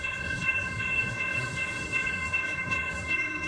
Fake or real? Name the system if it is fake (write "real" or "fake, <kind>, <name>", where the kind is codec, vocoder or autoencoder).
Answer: fake, codec, SNAC